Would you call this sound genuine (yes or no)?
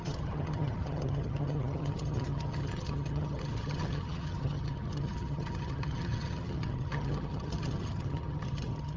no